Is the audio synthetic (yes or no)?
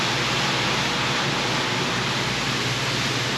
no